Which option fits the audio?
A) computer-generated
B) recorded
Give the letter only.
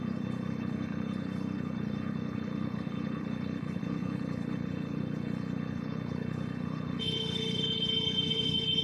A